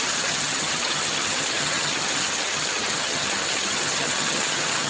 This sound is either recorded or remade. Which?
remade